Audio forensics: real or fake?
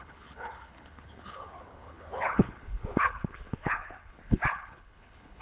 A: fake